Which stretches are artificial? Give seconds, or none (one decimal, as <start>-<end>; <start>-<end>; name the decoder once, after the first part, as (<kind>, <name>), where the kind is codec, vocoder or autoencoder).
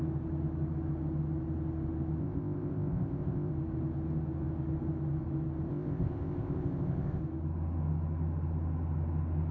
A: 2.2-3.5 (codec, ZipCodec); 5.7-7.2